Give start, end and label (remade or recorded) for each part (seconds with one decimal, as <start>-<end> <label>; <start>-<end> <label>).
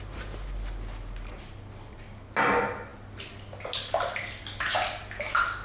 0.0-5.6 recorded